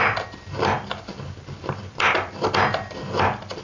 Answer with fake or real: real